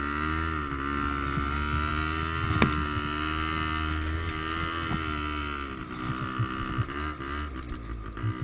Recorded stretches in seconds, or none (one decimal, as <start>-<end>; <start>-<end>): 0.0-8.4